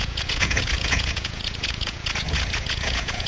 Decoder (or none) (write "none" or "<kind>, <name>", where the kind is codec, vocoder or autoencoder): vocoder, Vocos